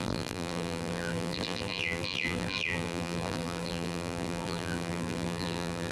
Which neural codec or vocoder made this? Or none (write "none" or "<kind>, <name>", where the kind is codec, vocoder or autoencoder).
vocoder, BigVGAN v2